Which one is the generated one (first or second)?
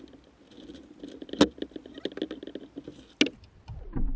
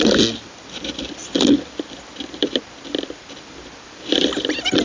second